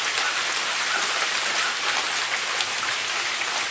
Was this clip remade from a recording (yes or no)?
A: no